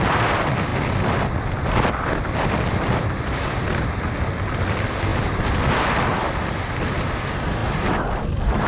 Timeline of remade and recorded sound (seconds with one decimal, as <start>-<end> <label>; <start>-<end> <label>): 0.0-7.6 recorded; 7.6-8.2 remade; 8.2-8.7 recorded